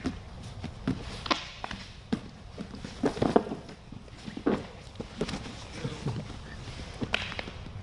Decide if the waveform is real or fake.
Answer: real